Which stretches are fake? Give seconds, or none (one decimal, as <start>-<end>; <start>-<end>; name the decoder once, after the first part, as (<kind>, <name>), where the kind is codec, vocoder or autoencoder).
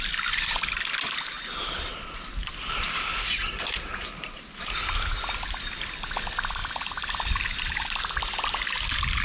6.6-8.0 (vocoder, BigVGAN v2)